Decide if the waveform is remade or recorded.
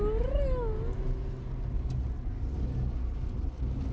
recorded